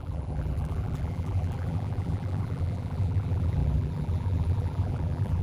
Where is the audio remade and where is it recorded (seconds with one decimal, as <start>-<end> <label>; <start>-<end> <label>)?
0.0-5.4 remade